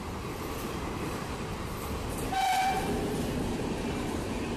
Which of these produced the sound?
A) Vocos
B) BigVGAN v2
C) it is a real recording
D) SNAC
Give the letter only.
C